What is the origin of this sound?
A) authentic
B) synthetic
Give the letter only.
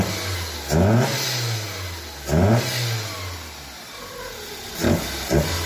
A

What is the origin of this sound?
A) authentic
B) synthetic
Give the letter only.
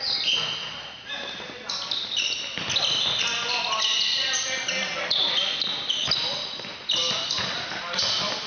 A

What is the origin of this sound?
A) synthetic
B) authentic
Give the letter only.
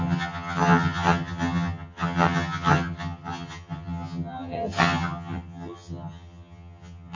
A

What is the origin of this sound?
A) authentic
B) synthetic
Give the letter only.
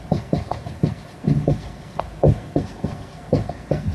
B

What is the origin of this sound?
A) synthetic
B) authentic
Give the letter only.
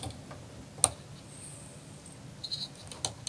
B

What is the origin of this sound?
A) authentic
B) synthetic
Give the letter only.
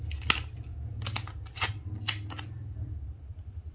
A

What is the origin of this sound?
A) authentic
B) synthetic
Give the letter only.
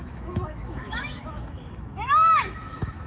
B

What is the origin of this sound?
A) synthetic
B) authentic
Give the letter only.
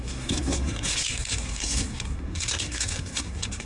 A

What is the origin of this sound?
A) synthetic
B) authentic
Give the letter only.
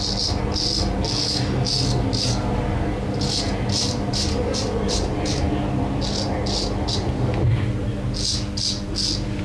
B